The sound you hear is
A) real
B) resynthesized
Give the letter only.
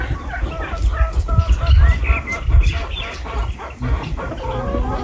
A